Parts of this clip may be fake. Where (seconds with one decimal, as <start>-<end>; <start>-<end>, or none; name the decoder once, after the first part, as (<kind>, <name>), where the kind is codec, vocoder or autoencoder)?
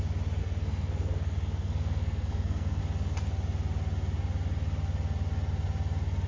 0.4-2.8 (codec, SNAC)